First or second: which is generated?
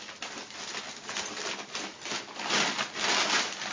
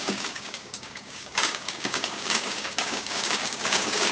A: second